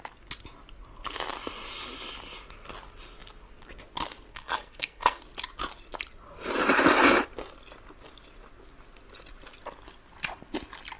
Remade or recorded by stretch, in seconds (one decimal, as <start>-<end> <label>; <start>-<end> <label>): 0.0-4.3 recorded; 4.3-5.2 remade; 5.2-11.0 recorded